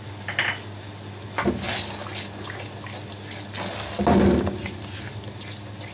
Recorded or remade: recorded